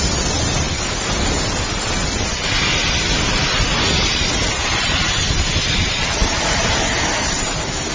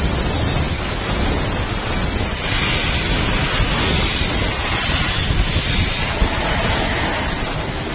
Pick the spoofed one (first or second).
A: first